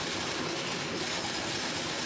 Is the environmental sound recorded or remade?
recorded